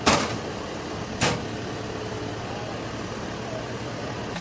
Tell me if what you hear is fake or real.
real